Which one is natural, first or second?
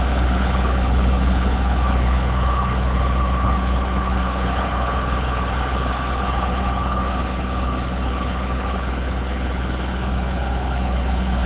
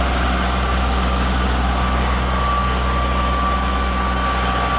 second